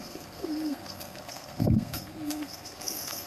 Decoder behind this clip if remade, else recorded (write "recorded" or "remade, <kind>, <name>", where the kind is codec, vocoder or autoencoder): remade, codec, SNAC